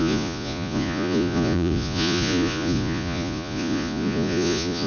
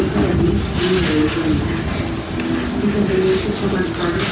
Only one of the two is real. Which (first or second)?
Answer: second